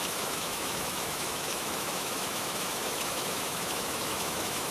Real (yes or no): no